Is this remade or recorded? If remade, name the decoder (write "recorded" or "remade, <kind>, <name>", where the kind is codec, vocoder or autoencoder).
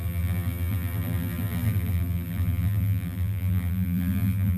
remade, vocoder, BigVGAN v2